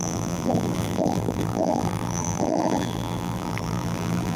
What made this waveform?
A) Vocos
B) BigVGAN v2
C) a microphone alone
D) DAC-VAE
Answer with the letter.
B